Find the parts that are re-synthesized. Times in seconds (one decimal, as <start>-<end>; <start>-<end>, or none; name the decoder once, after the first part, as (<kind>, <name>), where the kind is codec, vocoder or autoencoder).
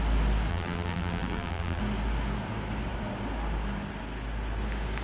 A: 0.5-1.8 (vocoder, BigVGAN v2)